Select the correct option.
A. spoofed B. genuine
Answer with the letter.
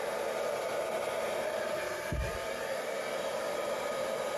B